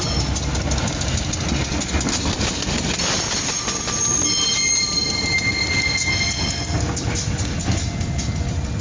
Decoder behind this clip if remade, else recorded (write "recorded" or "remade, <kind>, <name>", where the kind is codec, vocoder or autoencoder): recorded